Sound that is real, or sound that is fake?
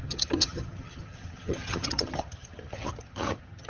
fake